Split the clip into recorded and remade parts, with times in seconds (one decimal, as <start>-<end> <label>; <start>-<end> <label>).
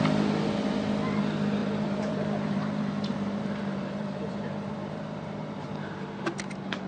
0.0-1.6 recorded; 1.6-5.7 remade; 5.7-6.9 recorded